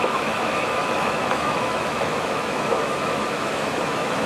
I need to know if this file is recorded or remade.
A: remade